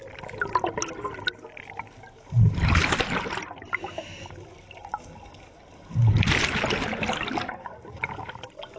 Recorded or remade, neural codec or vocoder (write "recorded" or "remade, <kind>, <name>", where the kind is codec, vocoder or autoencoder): recorded